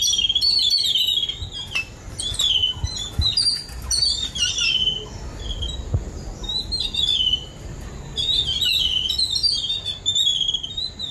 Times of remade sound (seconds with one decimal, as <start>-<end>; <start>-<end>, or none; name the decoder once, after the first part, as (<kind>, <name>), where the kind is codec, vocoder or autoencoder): none